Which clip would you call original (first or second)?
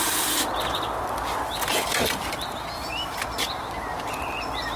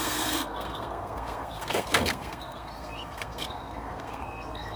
first